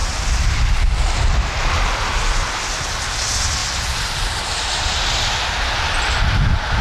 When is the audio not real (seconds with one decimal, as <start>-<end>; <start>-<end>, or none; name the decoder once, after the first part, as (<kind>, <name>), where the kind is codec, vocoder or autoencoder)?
0.0-1.9 (vocoder, BigVGAN v2)